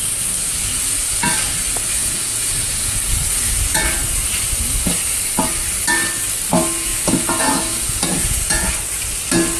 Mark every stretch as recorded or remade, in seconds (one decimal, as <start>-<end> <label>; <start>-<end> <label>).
0.0-2.0 recorded; 2.0-3.0 remade; 3.0-6.9 recorded; 6.9-8.7 remade; 8.7-9.6 recorded